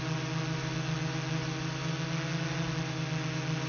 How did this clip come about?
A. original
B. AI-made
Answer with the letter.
A